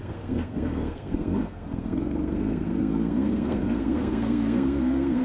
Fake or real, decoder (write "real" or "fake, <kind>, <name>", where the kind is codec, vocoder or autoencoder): fake, codec, SNAC